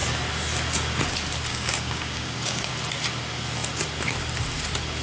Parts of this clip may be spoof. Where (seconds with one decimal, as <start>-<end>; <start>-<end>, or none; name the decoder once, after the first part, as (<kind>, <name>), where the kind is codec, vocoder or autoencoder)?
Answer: 1.5-2.7 (codec, DAC)